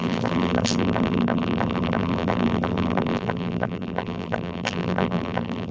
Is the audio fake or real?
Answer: fake